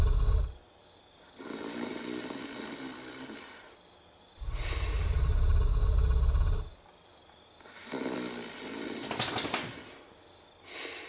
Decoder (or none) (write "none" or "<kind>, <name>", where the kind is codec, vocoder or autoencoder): none